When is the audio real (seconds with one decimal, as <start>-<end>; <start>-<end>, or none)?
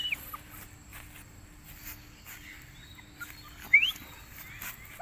0.0-5.0